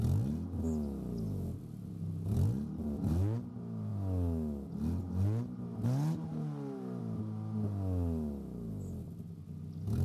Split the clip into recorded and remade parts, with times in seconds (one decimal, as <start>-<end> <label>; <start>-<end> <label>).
0.0-10.0 recorded